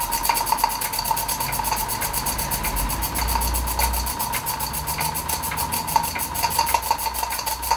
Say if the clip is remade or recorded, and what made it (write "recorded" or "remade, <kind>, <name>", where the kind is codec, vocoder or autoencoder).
recorded